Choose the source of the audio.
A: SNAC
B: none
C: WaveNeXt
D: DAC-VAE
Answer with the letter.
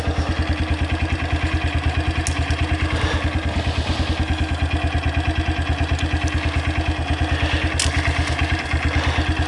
B